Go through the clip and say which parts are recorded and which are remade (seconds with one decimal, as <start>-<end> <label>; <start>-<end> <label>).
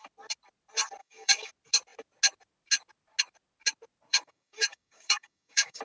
0.0-1.0 recorded; 1.0-1.5 remade; 1.5-4.1 recorded; 4.1-5.8 remade